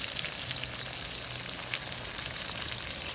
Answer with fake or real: real